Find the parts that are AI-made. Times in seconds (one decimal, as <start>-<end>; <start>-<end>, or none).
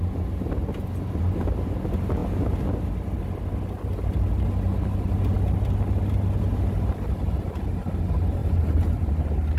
8.4-9.1